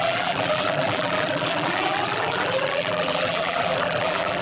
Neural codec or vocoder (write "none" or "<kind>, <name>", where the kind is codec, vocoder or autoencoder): vocoder, BigVGAN v2